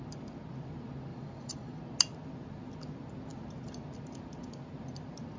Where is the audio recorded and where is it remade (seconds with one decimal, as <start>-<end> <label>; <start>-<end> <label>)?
0.0-1.1 recorded; 1.1-1.8 remade; 1.8-5.4 recorded